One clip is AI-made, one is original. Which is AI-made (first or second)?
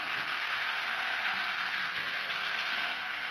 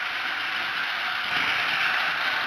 first